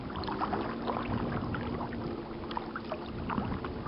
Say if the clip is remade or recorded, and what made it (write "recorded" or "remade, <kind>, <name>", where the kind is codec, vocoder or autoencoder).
recorded